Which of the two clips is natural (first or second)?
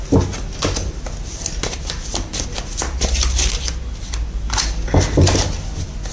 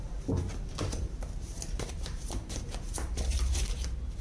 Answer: first